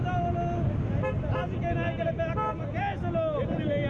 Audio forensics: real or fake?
real